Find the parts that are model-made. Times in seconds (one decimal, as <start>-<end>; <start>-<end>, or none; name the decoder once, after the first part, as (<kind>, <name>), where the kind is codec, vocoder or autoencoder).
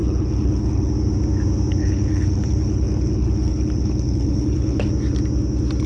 0.0-0.9 (codec, HILCodec); 1.8-4.9